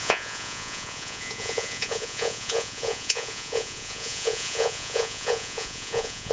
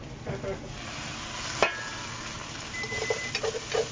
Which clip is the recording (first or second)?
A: second